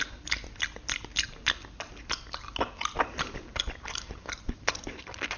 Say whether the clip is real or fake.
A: real